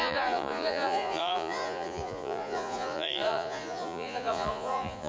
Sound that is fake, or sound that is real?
fake